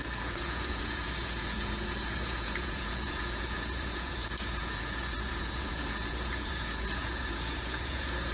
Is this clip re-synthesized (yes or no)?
yes